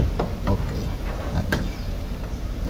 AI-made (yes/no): no